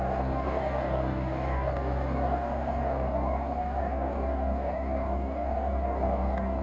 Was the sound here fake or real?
fake